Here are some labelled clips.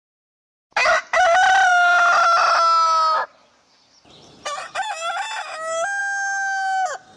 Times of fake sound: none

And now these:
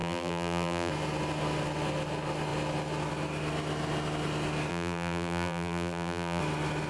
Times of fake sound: 0.0-0.9 (vocoder, BigVGAN v2); 4.7-6.4

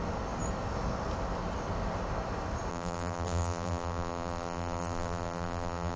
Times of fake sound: 2.7-6.0 (vocoder, BigVGAN v2)

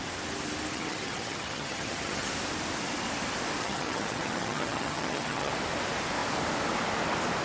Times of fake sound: 0.7-2.3 (vocoder, HiFi-GAN); 3.6-5.5

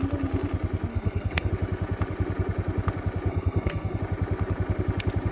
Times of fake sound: 0.9-1.5 (codec, SNAC); 3.3-4.0

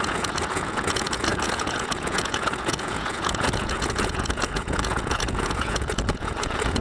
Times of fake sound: 0.0-6.8 (vocoder, Vocos)

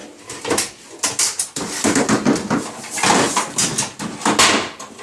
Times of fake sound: none

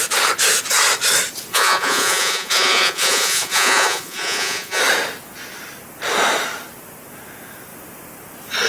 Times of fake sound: 1.5-4.8 (vocoder, Vocos)